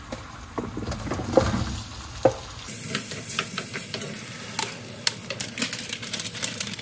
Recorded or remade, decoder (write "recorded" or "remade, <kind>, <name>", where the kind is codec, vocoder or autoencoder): recorded